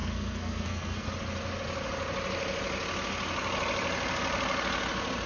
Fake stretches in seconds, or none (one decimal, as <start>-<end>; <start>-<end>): 0.0-1.1